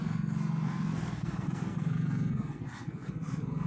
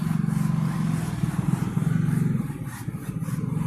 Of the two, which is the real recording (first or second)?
second